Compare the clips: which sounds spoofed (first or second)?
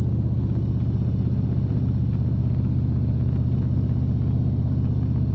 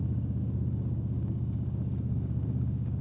second